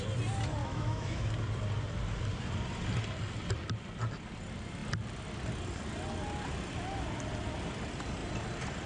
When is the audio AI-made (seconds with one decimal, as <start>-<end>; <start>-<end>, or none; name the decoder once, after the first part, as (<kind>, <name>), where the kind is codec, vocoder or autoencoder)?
0.6-1.3 (autoencoder, DAC-VAE)